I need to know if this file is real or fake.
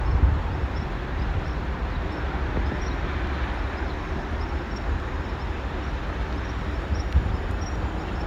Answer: real